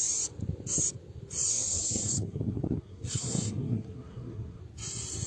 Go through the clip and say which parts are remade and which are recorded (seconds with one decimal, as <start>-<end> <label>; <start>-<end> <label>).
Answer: 0.0-1.5 recorded; 1.5-4.6 remade; 4.6-5.3 recorded

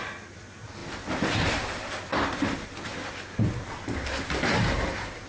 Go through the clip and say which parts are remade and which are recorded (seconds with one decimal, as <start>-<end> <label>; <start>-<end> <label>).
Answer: 0.0-5.3 recorded

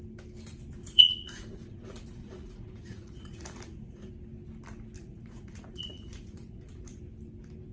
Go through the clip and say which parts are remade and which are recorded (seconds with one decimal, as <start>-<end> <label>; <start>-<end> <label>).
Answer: 0.0-0.8 recorded; 0.8-4.1 remade; 4.1-5.0 recorded; 5.0-7.0 remade; 7.0-7.7 recorded

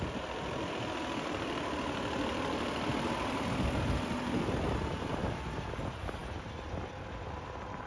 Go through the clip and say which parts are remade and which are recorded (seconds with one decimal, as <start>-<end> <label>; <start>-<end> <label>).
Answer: 0.0-7.9 recorded